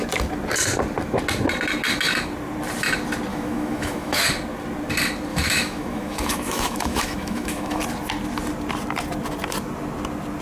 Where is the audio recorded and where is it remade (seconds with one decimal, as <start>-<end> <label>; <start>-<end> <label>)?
0.0-3.3 recorded; 3.3-4.3 remade; 4.3-5.3 recorded; 5.3-7.8 remade; 7.8-10.4 recorded